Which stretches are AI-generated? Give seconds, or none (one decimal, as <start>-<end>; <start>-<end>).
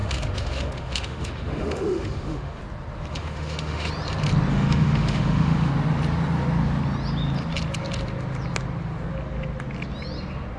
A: 0.0-2.6; 3.1-3.9; 4.5-5.7